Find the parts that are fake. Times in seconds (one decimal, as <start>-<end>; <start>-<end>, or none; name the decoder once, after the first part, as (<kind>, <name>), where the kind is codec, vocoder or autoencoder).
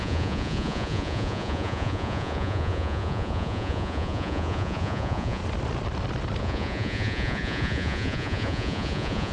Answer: 0.0-5.4 (vocoder, Vocos); 6.4-9.3